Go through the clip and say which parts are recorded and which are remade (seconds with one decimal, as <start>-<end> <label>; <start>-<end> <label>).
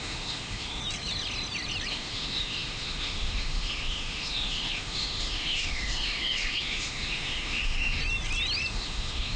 0.0-0.8 remade; 0.8-1.9 recorded; 1.9-8.0 remade; 8.0-8.7 recorded; 8.7-9.4 remade